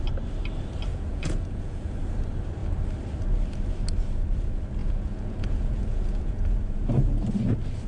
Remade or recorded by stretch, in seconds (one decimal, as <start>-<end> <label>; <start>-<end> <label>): 0.0-0.9 recorded; 0.9-1.9 remade; 1.9-4.8 recorded; 4.8-6.9 remade; 6.9-7.9 recorded